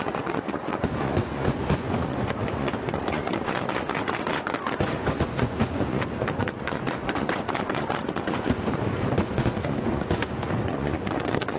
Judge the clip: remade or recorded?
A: remade